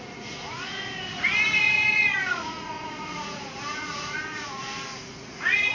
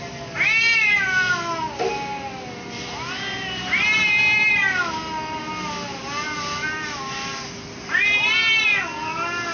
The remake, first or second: first